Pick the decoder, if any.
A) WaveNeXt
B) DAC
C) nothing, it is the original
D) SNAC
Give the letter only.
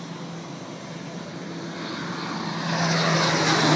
C